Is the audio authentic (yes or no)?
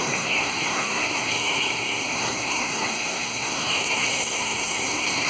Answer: no